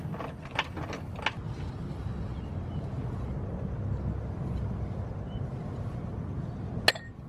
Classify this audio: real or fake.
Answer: real